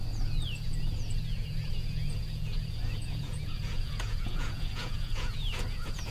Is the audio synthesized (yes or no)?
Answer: yes